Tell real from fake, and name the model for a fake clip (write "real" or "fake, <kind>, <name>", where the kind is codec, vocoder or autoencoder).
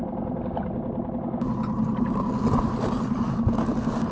real